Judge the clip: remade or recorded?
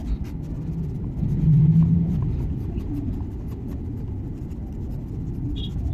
recorded